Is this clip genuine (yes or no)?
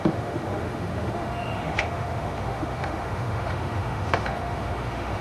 no